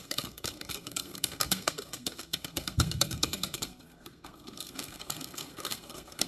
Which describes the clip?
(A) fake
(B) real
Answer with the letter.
A